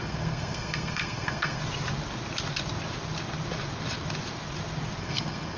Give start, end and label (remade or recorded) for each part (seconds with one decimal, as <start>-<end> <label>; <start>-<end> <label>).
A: 0.0-1.6 remade; 1.6-5.0 recorded; 5.0-5.6 remade

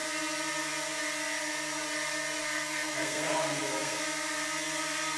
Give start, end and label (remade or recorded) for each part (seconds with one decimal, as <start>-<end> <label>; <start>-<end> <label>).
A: 0.0-2.4 recorded; 2.4-4.0 remade; 4.0-5.2 recorded

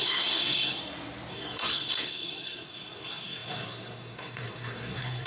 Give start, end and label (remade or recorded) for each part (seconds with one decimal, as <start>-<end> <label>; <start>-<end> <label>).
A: 0.0-0.8 remade; 0.8-1.3 recorded; 1.3-5.3 remade

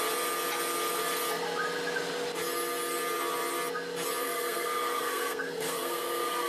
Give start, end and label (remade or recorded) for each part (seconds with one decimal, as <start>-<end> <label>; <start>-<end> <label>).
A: 0.0-4.2 recorded; 4.2-6.5 remade

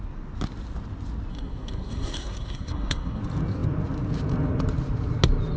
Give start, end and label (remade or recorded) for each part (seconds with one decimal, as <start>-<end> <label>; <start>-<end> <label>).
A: 0.0-1.3 recorded; 1.3-3.2 remade; 3.2-5.6 recorded

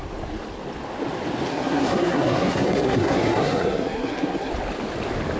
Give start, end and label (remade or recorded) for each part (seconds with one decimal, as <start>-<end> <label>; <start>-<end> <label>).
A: 0.0-1.5 recorded; 1.5-4.5 remade; 4.5-5.4 recorded